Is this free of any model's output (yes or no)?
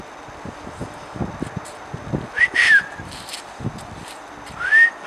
yes